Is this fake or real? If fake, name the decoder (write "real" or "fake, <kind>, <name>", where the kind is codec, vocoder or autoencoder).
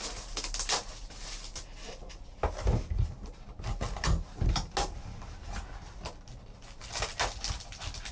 real